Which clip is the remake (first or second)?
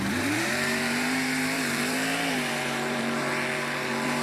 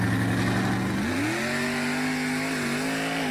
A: first